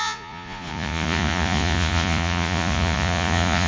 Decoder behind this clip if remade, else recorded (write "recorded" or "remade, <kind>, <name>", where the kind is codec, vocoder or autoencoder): remade, vocoder, Vocos